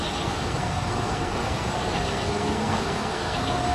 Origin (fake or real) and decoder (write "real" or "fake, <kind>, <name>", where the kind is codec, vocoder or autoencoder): fake, codec, SNAC